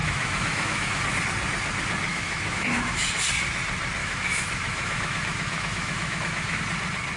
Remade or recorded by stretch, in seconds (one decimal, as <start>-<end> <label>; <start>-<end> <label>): 0.0-1.0 remade; 1.0-2.1 recorded; 2.1-3.0 remade; 3.0-4.0 recorded; 4.0-6.6 remade; 6.6-7.2 recorded